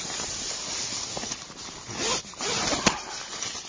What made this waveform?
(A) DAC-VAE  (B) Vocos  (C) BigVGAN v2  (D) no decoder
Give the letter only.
D